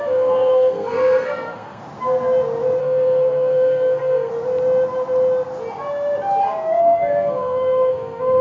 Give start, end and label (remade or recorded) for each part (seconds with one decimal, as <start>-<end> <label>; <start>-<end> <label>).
0.0-1.8 remade; 1.8-2.8 recorded; 2.8-4.3 remade; 4.3-6.8 recorded; 6.8-8.4 remade